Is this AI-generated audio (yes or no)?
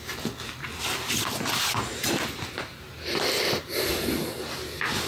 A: no